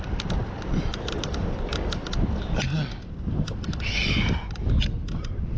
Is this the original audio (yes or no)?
yes